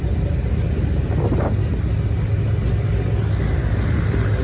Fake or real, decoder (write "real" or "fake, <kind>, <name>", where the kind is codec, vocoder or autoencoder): real